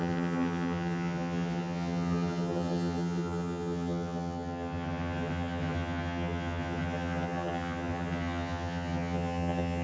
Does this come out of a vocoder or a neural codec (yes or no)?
yes